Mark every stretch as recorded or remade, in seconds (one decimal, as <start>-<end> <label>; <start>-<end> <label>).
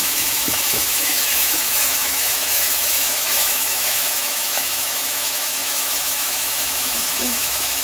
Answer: 0.0-7.8 remade